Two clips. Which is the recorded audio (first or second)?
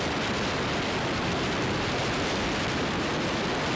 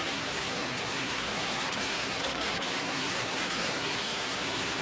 first